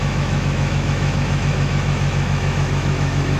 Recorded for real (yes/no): no